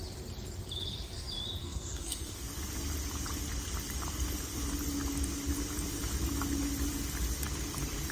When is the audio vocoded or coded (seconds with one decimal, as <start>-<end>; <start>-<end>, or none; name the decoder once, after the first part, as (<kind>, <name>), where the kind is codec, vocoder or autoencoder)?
1.6-2.5 (codec, SNAC)